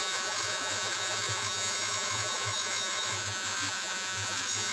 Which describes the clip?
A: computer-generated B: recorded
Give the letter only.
A